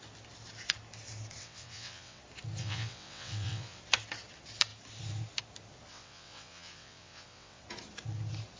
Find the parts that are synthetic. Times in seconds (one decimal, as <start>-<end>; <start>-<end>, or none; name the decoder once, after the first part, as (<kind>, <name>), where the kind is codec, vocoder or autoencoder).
1.4-2.2 (vocoder, WaveNeXt); 2.6-3.8; 5.9-7.6